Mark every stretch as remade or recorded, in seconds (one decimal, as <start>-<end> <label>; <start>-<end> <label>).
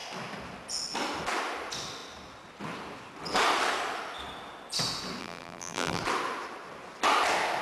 0.0-5.2 recorded; 5.2-6.0 remade; 6.0-7.6 recorded